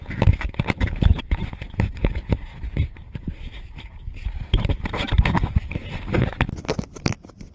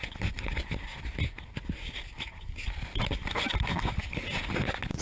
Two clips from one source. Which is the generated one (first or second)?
first